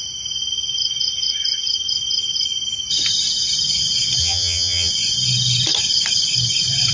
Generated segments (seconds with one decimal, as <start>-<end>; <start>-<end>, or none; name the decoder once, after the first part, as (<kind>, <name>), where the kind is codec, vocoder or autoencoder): 4.2-4.9 (vocoder, HiFi-GAN)